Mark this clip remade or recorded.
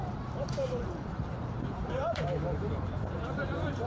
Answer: remade